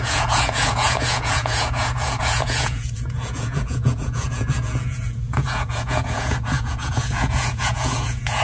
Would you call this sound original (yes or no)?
no